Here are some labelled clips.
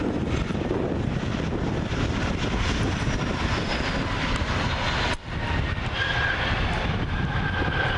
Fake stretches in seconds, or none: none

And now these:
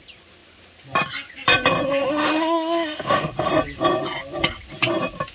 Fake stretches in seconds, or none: 2.0-3.5 (autoencoder, DAC-VAE)